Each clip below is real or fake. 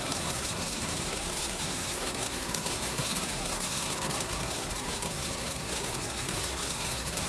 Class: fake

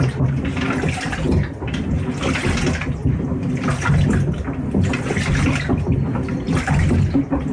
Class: real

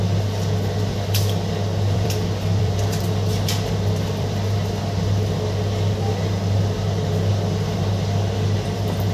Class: fake